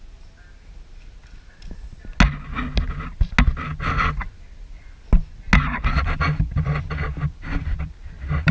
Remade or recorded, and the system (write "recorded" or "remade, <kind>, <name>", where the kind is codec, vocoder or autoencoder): recorded